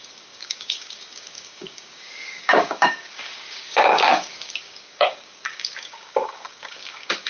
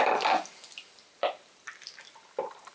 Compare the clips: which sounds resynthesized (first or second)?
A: first